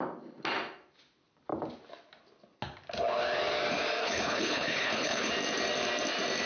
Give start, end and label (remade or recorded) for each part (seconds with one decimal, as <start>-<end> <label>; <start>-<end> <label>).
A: 0.0-4.0 recorded; 4.0-5.3 remade; 5.3-6.5 recorded